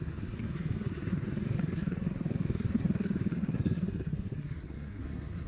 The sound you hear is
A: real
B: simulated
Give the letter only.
B